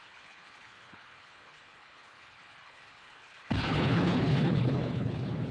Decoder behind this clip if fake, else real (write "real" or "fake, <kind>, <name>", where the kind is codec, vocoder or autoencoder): fake, codec, HILCodec